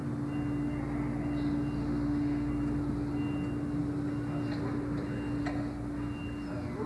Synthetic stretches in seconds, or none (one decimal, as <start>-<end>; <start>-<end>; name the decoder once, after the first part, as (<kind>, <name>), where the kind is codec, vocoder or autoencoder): 1.8-2.5 (autoencoder, DAC-VAE)